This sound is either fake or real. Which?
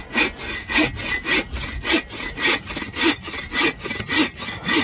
real